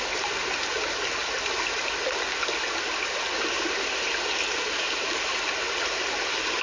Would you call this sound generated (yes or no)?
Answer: no